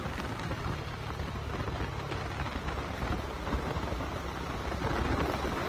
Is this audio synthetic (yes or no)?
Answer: no